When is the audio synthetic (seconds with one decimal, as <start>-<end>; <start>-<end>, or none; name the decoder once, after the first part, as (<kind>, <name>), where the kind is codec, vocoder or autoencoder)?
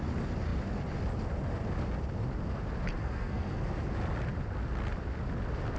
3.0-3.7 (codec, SNAC)